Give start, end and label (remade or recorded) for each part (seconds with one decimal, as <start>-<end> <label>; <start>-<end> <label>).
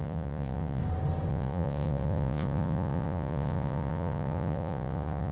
0.0-0.8 remade; 0.8-1.3 recorded; 1.3-5.3 remade